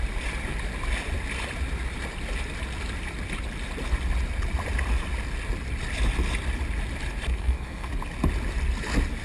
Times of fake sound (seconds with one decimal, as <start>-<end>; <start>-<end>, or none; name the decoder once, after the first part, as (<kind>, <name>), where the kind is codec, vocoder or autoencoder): 7.3-7.9 (codec, SNAC)